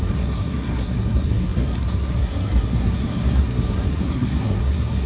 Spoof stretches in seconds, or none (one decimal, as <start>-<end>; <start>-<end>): 0.0-5.1